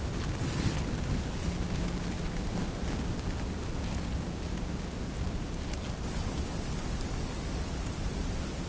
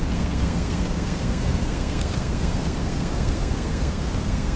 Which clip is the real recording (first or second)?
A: first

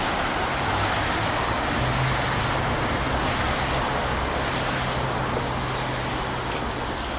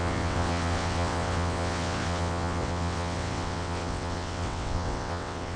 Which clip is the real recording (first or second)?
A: first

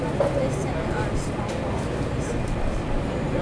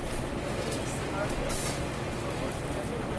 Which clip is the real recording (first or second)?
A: second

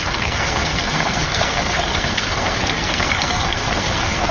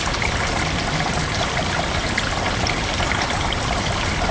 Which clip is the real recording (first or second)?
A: second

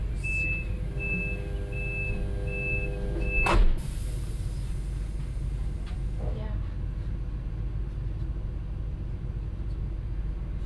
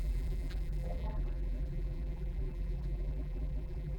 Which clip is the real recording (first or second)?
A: first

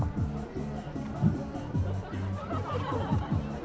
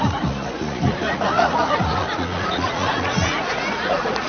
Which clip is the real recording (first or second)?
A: first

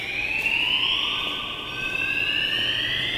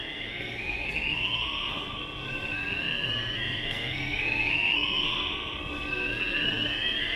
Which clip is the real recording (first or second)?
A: first